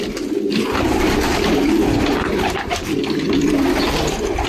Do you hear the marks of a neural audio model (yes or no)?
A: no